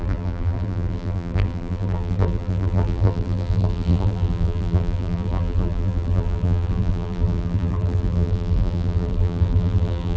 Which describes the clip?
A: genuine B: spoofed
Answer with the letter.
B